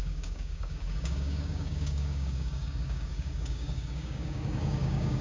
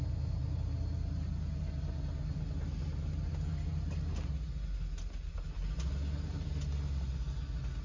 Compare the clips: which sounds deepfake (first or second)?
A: first